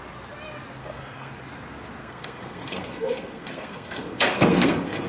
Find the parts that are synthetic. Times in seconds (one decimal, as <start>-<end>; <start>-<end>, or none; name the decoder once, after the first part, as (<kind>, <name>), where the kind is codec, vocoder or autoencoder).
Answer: 0.8-1.3 (codec, SNAC); 2.0-5.1